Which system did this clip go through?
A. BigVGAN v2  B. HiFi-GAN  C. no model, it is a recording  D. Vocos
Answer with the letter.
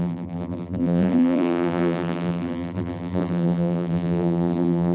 A